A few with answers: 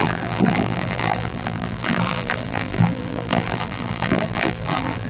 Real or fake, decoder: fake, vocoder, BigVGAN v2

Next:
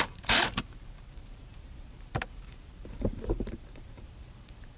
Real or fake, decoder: fake, vocoder, BigVGAN v2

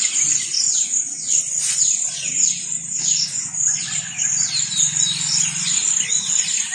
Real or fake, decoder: real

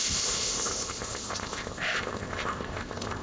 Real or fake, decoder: fake, codec, ZipCodec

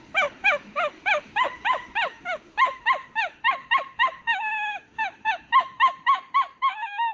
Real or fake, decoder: fake, autoencoder, DAC-VAE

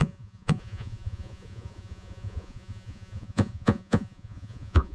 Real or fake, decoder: fake, vocoder, Vocos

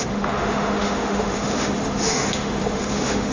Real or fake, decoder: fake, autoencoder, DAC-VAE